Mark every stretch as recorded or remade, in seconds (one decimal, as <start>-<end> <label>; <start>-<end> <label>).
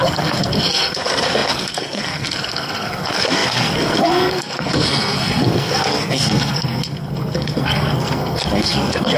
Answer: 0.0-9.2 remade